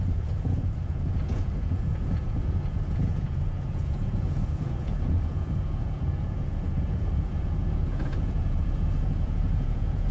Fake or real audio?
fake